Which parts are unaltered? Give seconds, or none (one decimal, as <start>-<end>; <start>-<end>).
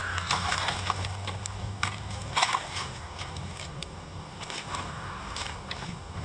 none